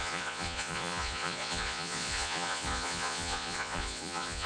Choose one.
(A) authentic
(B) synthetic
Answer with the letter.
B